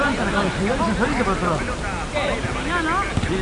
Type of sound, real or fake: real